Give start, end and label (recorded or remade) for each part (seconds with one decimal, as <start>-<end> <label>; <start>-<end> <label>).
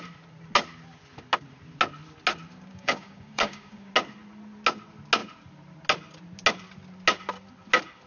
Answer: 0.0-2.7 recorded; 2.7-3.9 remade; 3.9-8.1 recorded